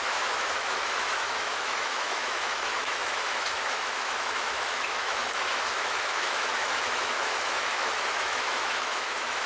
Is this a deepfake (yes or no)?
yes